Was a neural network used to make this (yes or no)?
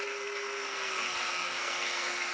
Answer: yes